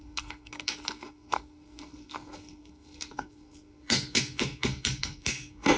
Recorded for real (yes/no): no